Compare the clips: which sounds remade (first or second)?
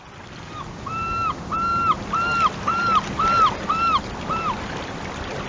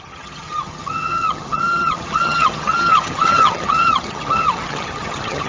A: second